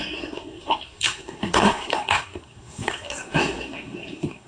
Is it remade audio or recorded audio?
remade